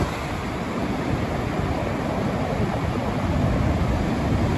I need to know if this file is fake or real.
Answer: real